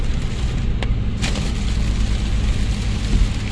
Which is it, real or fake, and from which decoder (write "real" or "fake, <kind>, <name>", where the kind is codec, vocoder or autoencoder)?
real